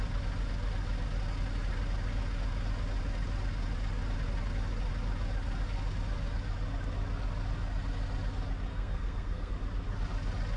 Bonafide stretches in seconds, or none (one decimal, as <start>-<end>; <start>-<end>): 0.0-8.7; 9.5-10.6